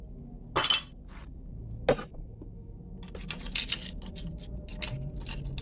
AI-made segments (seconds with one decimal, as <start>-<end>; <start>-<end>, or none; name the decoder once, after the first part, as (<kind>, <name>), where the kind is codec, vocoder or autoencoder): none